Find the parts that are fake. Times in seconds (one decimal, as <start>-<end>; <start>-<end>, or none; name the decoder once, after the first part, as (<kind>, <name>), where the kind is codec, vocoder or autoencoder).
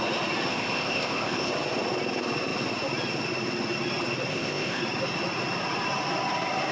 0.5-1.5 (codec, ZipCodec); 4.3-4.8